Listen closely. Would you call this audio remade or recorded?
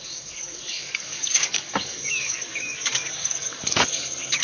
remade